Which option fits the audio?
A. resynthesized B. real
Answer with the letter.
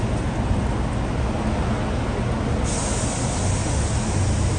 B